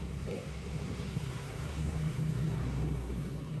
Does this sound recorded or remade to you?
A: remade